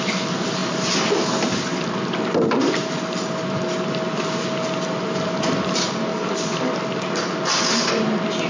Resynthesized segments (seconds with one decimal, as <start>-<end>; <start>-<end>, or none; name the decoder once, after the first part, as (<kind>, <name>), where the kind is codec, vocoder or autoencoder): 6.1-6.7 (codec, DAC)